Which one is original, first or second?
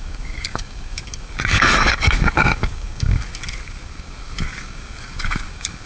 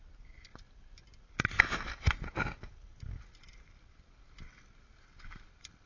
second